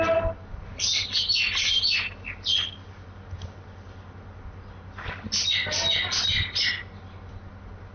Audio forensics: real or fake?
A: real